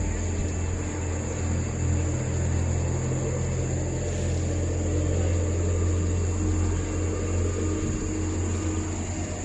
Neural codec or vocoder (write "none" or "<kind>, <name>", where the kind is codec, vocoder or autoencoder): none